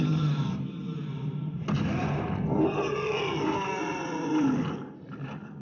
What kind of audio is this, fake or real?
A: real